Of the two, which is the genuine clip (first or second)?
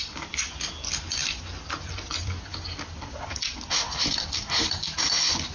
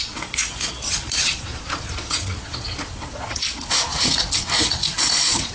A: first